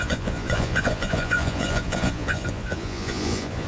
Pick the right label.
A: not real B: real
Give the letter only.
A